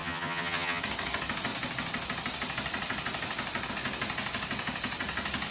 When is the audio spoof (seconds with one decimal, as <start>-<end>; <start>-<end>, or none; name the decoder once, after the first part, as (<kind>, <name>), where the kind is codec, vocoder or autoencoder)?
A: 0.0-0.8 (vocoder, HiFi-GAN)